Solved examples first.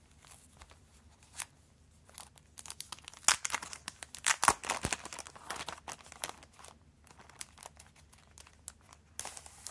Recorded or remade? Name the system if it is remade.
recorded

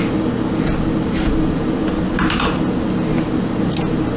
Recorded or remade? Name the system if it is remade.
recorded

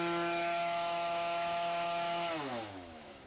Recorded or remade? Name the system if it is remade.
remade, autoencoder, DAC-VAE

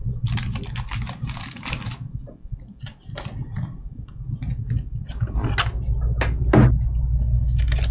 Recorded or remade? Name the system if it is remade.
recorded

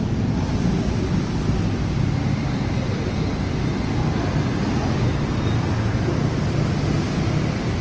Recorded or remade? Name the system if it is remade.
recorded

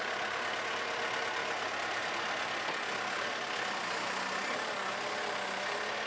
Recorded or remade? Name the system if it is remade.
recorded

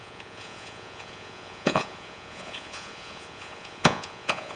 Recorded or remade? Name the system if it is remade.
remade, vocoder, Vocos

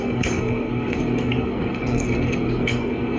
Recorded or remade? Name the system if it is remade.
remade, codec, SNAC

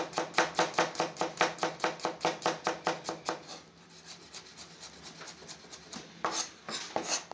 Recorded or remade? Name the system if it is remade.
recorded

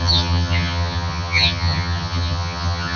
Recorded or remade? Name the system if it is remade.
remade, vocoder, HiFi-GAN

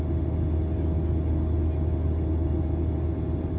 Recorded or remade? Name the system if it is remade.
recorded